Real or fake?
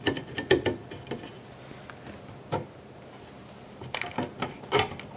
real